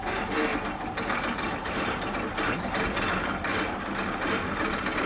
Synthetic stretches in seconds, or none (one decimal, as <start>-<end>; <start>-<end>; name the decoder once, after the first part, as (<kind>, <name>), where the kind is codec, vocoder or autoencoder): 0.5-2.8 (vocoder, BigVGAN v2); 3.5-5.1